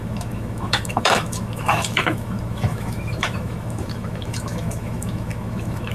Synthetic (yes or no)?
yes